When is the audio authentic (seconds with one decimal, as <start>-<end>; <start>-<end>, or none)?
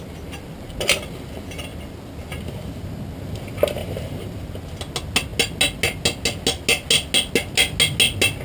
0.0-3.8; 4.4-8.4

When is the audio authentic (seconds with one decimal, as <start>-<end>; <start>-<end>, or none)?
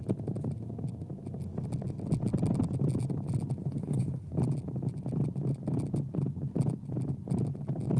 0.0-3.6; 4.3-8.0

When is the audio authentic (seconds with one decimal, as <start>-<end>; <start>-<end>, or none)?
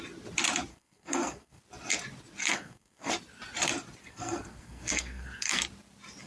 0.0-0.7; 1.6-2.4; 3.1-4.0; 5.6-6.3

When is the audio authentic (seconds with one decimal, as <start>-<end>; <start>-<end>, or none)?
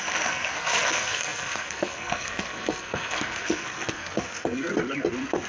4.7-5.5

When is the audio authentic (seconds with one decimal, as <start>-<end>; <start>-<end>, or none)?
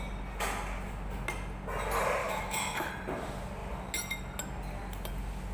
0.0-2.2; 2.9-5.5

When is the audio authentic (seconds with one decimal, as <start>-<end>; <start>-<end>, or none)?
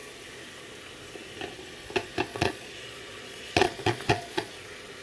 0.0-2.3; 4.5-5.0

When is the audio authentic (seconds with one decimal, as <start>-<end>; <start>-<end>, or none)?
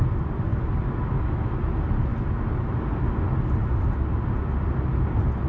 0.0-5.5